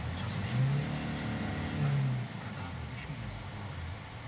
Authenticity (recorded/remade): recorded